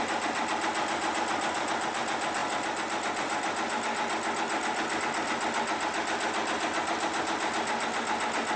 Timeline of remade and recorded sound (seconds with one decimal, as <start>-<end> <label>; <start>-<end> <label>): 0.0-8.6 recorded

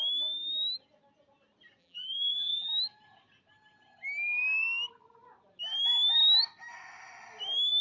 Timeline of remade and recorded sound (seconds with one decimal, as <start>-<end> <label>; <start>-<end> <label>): 0.0-1.8 recorded; 1.8-2.7 remade; 2.7-7.8 recorded

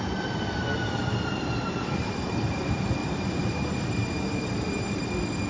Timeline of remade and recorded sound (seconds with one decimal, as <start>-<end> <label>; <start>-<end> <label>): 0.0-1.3 recorded; 1.3-2.3 remade; 2.3-3.0 recorded; 3.0-5.1 remade; 5.1-5.5 recorded

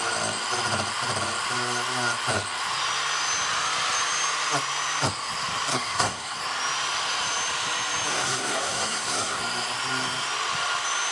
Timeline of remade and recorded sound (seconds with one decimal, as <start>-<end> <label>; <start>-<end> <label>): 0.0-5.7 recorded; 5.7-6.4 remade; 6.4-8.1 recorded; 8.1-9.4 remade; 9.4-11.1 recorded

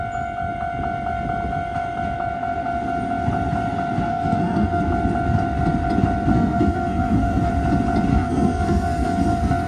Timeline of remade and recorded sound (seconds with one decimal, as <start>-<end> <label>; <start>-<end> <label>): 0.0-4.1 recorded; 4.1-4.8 remade; 4.8-6.3 recorded; 6.3-7.5 remade; 7.5-8.1 recorded; 8.1-9.7 remade